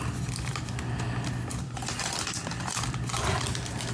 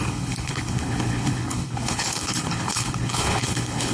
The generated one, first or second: second